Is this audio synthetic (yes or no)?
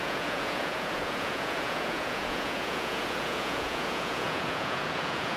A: yes